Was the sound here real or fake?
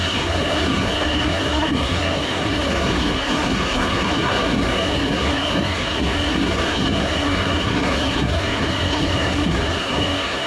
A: fake